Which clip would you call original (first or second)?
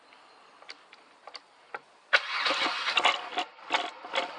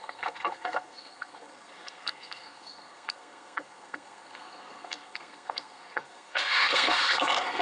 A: first